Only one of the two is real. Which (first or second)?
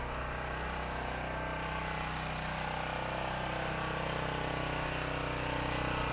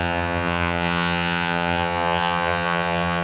first